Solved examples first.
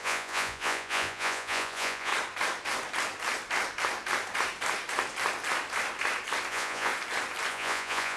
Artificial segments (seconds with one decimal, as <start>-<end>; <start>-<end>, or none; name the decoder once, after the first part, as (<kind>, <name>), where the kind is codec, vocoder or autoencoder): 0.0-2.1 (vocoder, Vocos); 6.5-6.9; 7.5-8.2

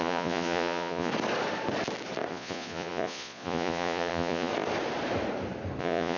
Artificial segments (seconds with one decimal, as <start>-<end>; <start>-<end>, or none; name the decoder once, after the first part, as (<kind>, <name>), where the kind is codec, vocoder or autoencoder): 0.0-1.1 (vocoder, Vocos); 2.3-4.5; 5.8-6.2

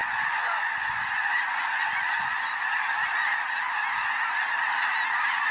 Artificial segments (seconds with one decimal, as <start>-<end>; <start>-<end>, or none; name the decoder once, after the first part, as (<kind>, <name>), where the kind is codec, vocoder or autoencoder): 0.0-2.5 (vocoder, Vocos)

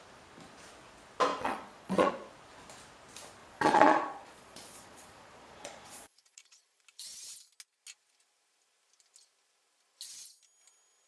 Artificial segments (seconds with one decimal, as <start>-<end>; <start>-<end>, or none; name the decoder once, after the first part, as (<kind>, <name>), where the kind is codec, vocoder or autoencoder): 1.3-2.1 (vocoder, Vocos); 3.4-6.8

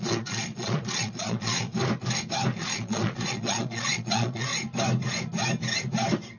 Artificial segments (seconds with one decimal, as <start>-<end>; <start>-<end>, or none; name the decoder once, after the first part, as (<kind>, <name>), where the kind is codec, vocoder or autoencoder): 0.0-1.7 (vocoder, Vocos); 2.6-4.5

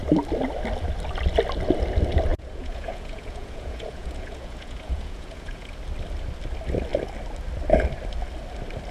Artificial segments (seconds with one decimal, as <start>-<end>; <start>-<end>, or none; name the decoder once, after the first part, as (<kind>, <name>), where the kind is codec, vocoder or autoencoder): 2.3-5.7 (vocoder, Vocos)